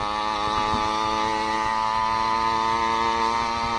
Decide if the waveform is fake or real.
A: real